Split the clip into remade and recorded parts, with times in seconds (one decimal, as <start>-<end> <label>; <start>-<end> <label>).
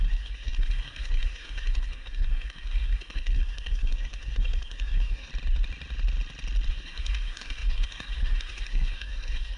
0.0-5.3 remade; 5.3-6.7 recorded; 6.7-9.6 remade